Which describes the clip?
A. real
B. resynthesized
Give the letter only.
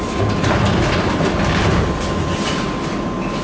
A